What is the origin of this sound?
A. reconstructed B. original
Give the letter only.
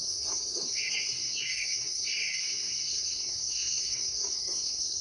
A